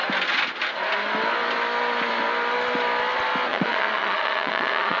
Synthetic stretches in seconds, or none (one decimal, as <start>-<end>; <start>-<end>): 3.5-5.0